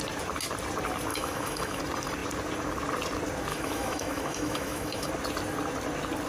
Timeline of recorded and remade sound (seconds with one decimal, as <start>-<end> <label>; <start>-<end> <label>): 0.0-1.1 recorded; 1.1-1.8 remade; 1.8-3.5 recorded; 3.5-5.1 remade; 5.1-6.3 recorded